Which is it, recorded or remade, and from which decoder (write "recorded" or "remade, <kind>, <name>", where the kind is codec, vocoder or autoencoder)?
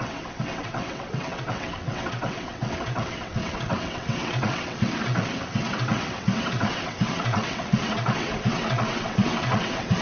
remade, vocoder, WaveNeXt